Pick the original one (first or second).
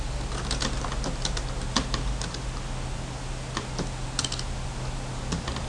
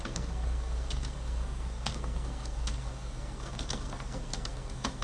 first